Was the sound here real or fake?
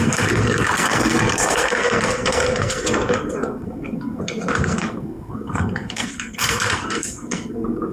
fake